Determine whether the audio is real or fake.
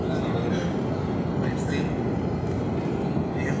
real